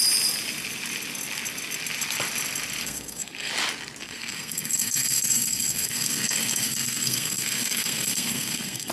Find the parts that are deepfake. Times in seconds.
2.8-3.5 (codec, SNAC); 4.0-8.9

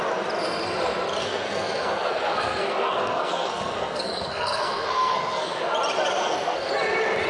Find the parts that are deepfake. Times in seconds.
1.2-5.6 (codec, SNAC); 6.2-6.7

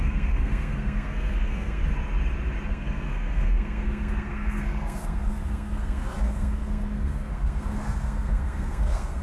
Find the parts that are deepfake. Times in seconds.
0.0-1.8 (codec, SNAC); 2.7-9.2